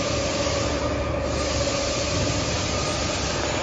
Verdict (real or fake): real